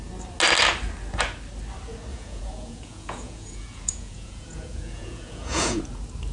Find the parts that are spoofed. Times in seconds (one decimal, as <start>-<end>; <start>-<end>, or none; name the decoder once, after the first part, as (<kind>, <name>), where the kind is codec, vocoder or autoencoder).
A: 2.1-5.8 (vocoder, Vocos)